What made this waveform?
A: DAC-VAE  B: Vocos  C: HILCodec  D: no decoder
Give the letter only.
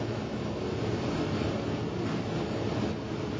D